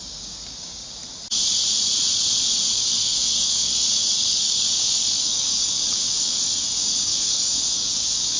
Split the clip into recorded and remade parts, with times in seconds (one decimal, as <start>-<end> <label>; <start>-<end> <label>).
0.0-1.0 remade; 1.0-2.7 recorded; 2.7-8.4 remade

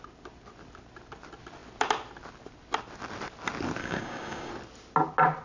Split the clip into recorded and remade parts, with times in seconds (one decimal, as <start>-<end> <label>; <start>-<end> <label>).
0.0-3.8 recorded; 3.8-4.5 remade; 4.5-5.4 recorded

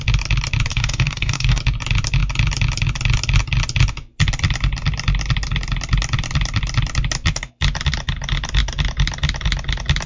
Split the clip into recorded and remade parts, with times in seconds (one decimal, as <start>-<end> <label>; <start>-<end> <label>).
0.0-0.7 recorded; 0.7-1.6 remade; 1.6-10.1 recorded

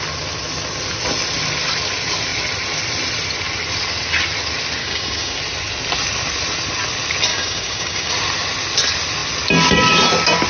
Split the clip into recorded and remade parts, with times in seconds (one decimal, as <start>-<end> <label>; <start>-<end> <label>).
0.0-4.8 recorded; 4.8-5.4 remade; 5.4-7.3 recorded; 7.3-8.1 remade; 8.1-10.5 recorded

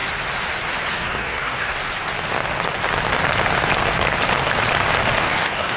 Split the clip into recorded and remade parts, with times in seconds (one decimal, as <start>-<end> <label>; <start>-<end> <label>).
0.0-0.9 recorded; 0.9-1.7 remade; 1.7-5.2 recorded; 5.2-5.8 remade

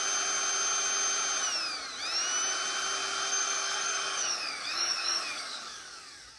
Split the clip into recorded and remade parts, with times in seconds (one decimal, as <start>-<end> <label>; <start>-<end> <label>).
0.0-3.3 recorded; 3.3-6.4 remade